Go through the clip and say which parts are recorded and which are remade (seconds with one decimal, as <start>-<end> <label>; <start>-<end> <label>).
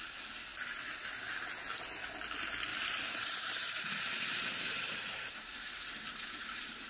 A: 0.0-2.7 recorded; 2.7-6.9 remade